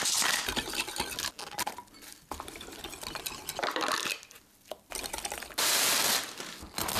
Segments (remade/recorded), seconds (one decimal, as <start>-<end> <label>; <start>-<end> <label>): 0.0-7.0 recorded